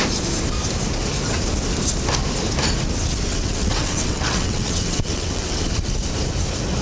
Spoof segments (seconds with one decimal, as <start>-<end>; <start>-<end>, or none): 3.3-5.6